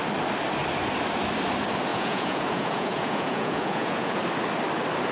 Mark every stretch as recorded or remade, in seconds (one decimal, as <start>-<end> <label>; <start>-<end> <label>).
0.0-1.9 recorded; 1.9-4.2 remade; 4.2-5.1 recorded